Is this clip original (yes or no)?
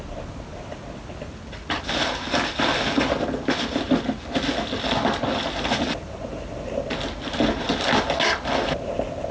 yes